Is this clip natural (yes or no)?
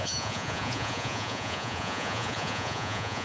no